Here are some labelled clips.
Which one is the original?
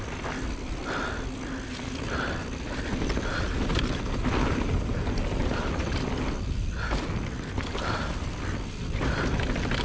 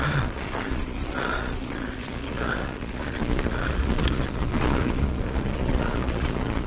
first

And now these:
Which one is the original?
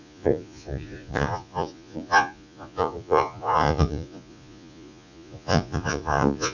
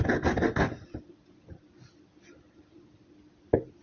second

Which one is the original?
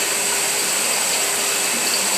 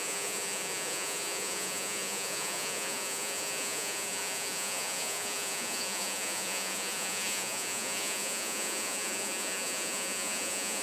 first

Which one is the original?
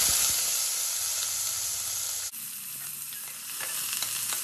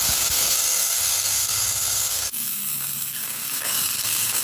first